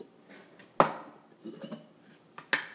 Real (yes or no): yes